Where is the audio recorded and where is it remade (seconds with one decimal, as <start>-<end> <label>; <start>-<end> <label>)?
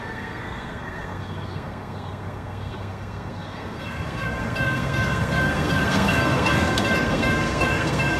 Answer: 0.0-8.2 remade